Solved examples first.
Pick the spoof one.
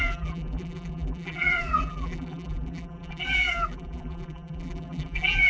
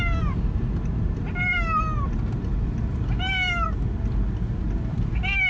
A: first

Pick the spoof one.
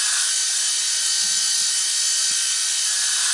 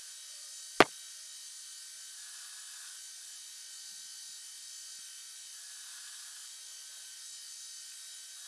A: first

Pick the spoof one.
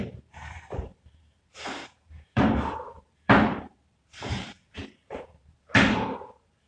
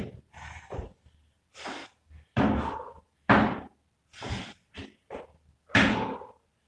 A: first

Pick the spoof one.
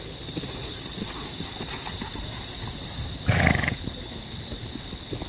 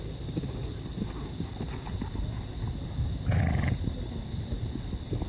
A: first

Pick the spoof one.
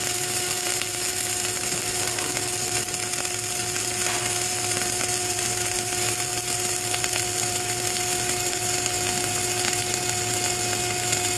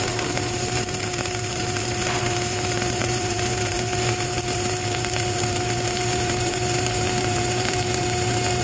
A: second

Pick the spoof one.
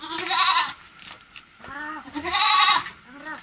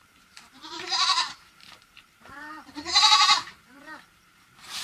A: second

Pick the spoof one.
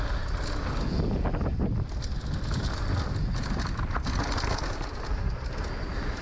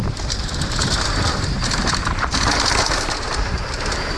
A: second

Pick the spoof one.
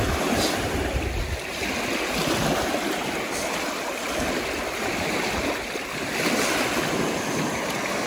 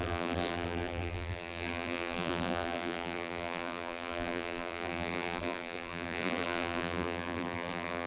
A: second